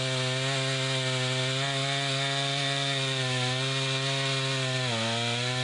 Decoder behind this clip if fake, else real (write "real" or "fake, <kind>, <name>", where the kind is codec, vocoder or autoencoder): real